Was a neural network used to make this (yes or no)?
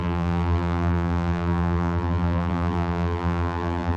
yes